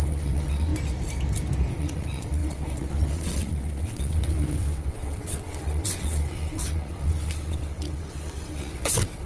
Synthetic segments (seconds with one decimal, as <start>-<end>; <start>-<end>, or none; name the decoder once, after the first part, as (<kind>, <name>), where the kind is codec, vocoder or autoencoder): 0.0-0.7 (vocoder, WaveNeXt); 1.7-9.3